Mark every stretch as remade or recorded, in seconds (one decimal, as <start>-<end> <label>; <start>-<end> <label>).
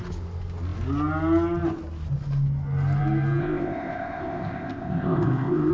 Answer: 0.0-3.4 recorded; 3.4-5.7 remade